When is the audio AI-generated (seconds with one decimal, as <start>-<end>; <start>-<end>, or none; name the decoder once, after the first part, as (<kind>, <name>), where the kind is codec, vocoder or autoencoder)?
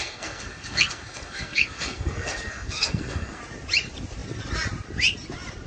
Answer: 0.0-3.4 (codec, SNAC)